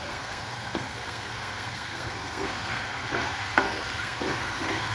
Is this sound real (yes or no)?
no